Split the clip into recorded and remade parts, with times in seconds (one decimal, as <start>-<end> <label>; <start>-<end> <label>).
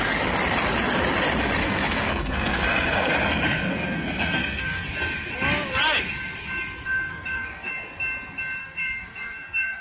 0.0-1.6 recorded; 1.6-3.1 remade; 3.1-3.7 recorded; 3.7-4.9 remade; 4.9-7.1 recorded; 7.1-7.7 remade; 7.7-8.6 recorded; 8.6-9.8 remade